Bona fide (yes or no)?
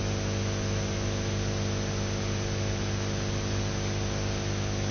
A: yes